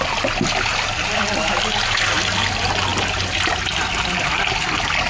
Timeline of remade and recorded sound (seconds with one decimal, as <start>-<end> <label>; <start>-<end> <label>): 0.0-0.7 recorded; 0.7-1.5 remade; 1.5-2.9 recorded; 2.9-4.3 remade; 4.3-5.1 recorded